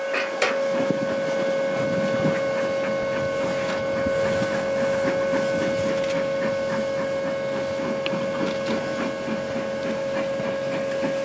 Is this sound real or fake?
real